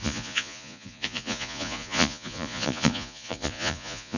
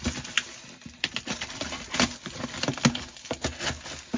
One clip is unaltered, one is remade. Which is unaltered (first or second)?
second